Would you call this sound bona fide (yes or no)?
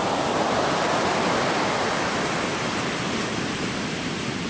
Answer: yes